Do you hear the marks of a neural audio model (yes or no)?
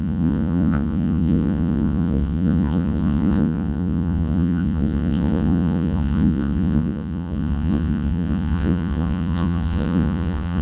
yes